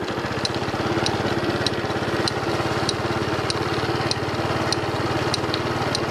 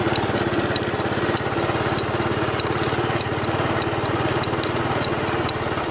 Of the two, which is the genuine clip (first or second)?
first